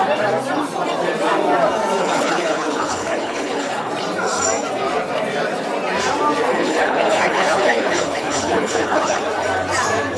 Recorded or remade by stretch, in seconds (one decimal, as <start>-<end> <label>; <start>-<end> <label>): 0.0-2.0 recorded; 2.0-3.9 remade; 3.9-6.5 recorded; 6.5-9.2 remade; 9.2-10.2 recorded